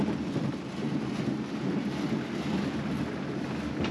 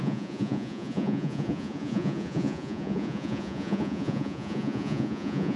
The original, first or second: first